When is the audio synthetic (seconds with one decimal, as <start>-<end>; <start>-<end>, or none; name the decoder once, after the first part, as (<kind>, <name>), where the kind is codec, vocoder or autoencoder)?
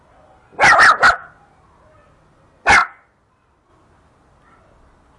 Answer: none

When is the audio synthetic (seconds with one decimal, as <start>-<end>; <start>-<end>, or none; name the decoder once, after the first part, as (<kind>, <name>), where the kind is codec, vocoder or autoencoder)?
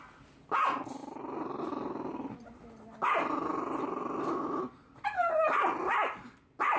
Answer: none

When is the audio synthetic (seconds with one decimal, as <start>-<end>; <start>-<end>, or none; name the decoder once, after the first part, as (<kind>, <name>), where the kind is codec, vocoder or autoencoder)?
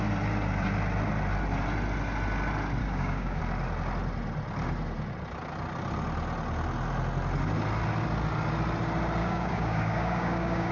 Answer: 2.8-3.4 (codec, DAC); 9.2-10.7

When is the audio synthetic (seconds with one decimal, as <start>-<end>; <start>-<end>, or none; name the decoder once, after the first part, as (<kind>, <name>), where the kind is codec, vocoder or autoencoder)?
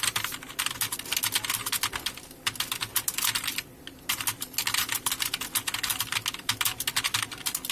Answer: none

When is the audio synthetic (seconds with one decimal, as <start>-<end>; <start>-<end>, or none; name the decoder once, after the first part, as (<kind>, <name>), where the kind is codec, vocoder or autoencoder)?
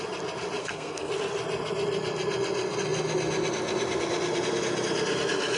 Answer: 0.6-1.1 (codec, SNAC)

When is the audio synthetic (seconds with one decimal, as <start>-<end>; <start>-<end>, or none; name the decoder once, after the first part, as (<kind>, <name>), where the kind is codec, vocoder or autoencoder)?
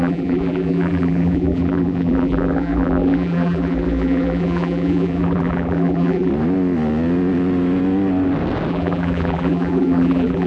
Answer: 0.0-6.3 (vocoder, BigVGAN v2); 8.7-10.5